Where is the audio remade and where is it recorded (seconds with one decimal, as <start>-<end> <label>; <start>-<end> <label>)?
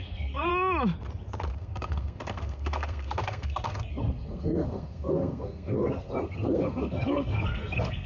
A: 0.0-0.5 remade; 0.5-1.5 recorded; 1.5-8.1 remade